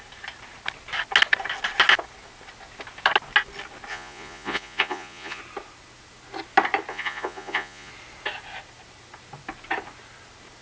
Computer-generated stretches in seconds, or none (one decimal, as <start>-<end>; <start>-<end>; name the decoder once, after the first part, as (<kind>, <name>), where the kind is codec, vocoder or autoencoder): 3.9-5.4 (vocoder, Vocos); 6.9-7.9